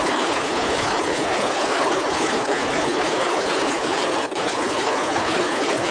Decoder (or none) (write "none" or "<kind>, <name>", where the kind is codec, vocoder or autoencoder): codec, HILCodec